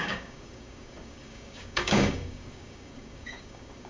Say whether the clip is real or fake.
fake